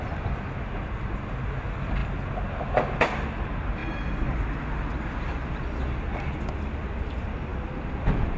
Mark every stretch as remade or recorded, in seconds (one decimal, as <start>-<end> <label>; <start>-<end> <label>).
0.0-8.4 recorded